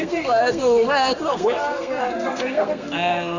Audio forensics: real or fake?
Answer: fake